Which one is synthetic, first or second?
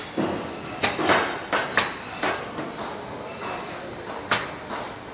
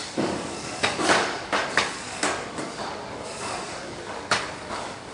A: second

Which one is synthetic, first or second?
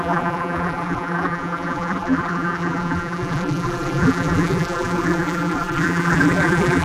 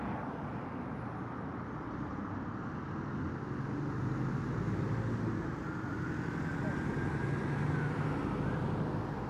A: first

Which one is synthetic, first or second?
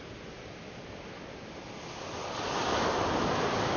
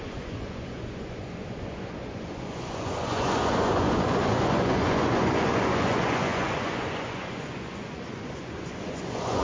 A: second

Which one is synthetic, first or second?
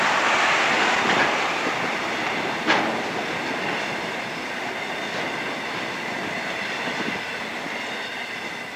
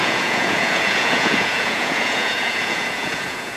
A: second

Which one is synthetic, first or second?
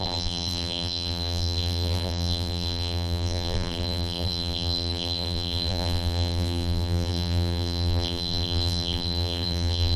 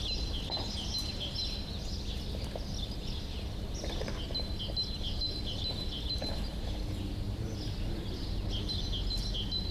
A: first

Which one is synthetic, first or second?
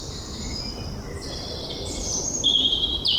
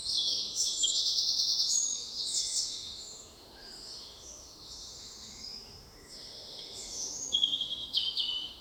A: second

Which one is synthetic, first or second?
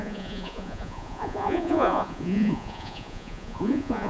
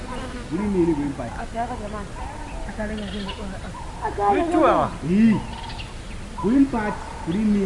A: first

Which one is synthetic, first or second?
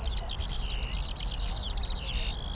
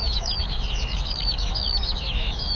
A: second